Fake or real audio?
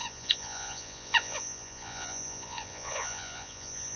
fake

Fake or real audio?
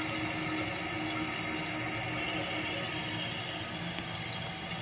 real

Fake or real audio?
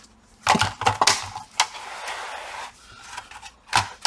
real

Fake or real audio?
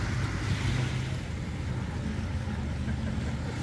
real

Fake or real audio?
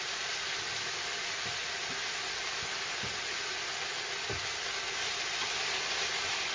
real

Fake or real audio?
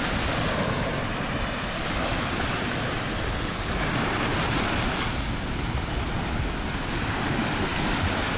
real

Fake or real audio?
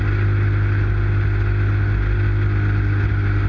real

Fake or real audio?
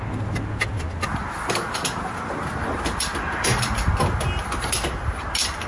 real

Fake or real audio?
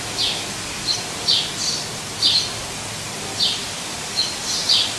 real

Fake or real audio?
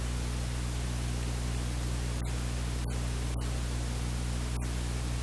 real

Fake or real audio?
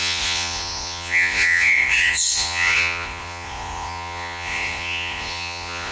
fake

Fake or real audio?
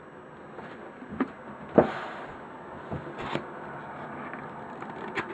real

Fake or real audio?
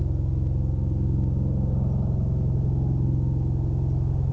real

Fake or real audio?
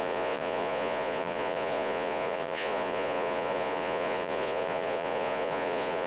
fake